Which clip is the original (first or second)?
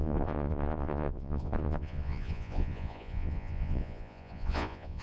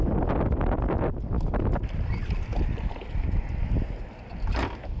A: second